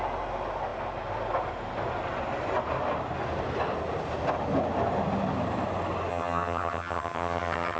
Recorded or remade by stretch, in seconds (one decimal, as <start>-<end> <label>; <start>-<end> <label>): 0.0-6.1 recorded; 6.1-7.8 remade